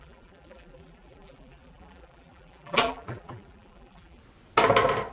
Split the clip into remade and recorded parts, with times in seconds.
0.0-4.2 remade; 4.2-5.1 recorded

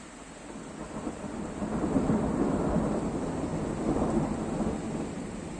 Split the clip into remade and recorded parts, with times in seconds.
0.0-3.5 remade; 3.5-5.0 recorded; 5.0-5.6 remade

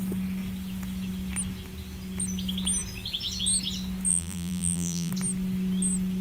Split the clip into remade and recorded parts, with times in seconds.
0.0-4.1 recorded; 4.1-5.1 remade; 5.1-6.2 recorded